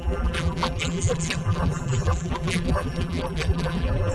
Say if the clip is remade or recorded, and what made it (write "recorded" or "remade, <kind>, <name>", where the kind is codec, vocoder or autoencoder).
remade, vocoder, BigVGAN v2